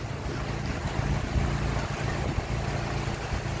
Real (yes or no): yes